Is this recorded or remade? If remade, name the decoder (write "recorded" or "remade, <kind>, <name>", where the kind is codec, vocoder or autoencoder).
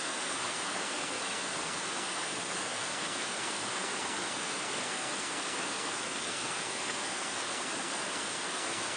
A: remade, codec, SNAC